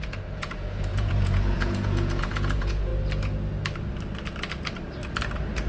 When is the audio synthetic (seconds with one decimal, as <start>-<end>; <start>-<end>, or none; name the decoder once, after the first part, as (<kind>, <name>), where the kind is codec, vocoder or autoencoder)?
0.0-2.9 (vocoder, Vocos)